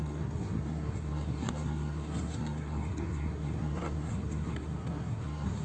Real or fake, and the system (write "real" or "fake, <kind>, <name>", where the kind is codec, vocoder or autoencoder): fake, codec, SNAC